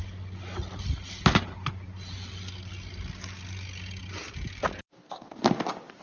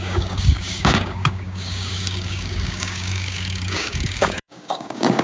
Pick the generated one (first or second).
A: second